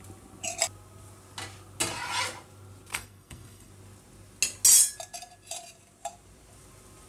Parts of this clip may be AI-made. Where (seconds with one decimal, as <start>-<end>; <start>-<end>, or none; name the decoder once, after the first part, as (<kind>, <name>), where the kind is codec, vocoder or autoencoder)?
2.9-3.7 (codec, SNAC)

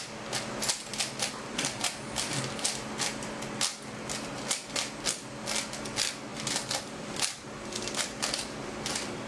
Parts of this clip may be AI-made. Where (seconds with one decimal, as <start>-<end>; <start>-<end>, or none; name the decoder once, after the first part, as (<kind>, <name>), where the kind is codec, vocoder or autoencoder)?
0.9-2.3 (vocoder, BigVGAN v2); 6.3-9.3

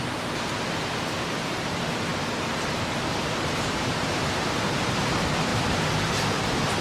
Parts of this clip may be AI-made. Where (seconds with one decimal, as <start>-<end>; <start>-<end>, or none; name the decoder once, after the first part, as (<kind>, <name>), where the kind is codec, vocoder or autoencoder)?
0.0-6.8 (vocoder, BigVGAN v2)

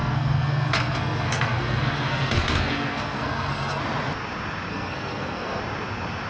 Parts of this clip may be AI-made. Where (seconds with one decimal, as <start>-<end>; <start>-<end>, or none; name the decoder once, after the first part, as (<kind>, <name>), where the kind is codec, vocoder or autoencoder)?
0.0-3.8 (codec, SNAC); 4.7-5.6

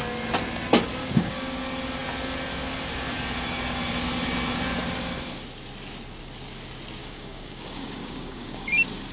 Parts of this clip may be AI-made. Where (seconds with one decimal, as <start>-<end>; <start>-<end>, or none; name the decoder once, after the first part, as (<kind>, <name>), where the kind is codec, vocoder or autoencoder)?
1.0-1.6 (codec, DAC); 7.0-8.7